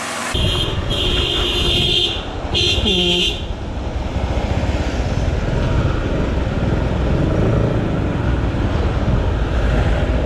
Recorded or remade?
recorded